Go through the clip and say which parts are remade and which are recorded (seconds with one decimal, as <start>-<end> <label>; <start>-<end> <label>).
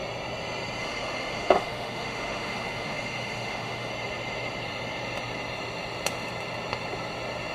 0.0-0.8 recorded; 0.8-3.9 remade; 3.9-7.5 recorded